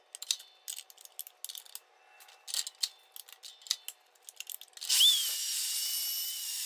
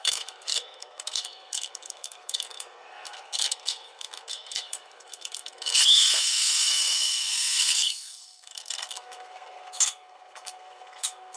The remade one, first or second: second